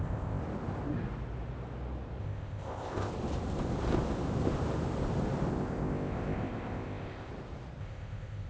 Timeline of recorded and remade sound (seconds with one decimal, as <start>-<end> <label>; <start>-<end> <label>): 0.0-0.4 remade; 0.4-2.2 recorded; 2.2-3.1 remade; 3.1-5.5 recorded; 5.5-7.3 remade; 7.3-7.8 recorded; 7.8-8.5 remade